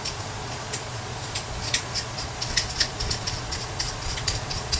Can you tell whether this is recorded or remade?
remade